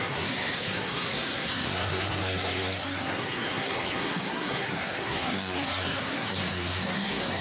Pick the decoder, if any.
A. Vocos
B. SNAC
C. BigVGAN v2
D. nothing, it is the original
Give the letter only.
B